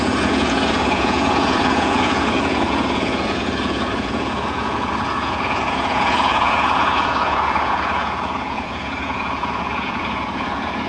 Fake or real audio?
fake